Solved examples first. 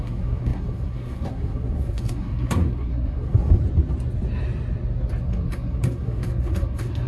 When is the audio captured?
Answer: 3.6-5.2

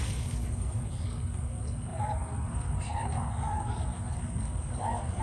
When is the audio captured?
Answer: none

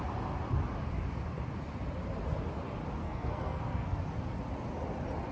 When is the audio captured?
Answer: 0.0-3.0; 4.0-5.3

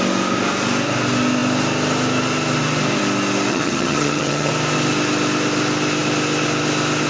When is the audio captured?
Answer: 0.0-3.5; 4.5-7.1

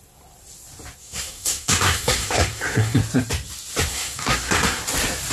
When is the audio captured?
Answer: 0.0-1.0; 3.0-3.9; 4.8-5.3